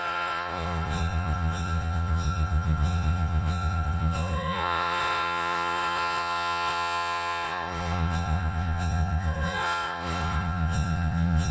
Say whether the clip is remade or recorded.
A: remade